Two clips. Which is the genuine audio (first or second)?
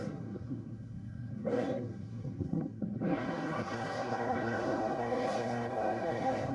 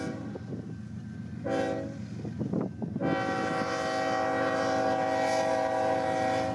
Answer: second